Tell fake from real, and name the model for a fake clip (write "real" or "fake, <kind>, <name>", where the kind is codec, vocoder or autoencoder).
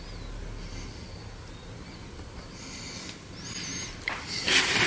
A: real